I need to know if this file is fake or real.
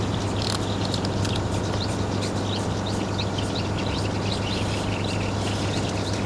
real